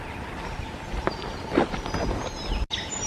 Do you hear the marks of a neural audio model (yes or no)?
no